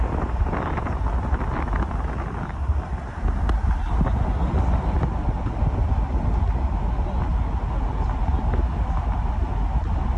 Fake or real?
real